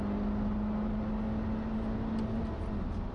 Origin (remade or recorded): recorded